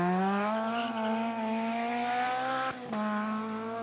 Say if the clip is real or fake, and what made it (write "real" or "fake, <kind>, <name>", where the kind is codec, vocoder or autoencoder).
real